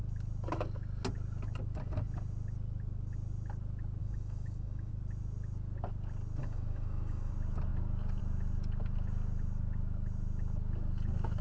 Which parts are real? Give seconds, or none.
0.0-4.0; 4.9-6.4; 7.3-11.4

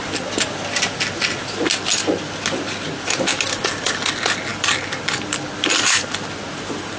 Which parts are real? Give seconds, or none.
0.0-4.5; 6.4-7.0

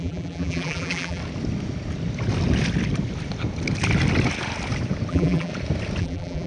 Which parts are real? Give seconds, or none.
1.2-5.1; 5.5-6.0

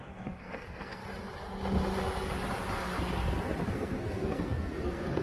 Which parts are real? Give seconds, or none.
1.0-3.7

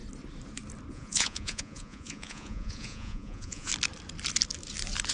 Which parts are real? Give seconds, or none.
0.0-0.9; 3.7-5.1

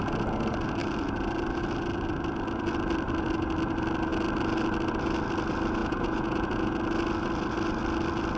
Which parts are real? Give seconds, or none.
0.0-5.8; 6.7-8.4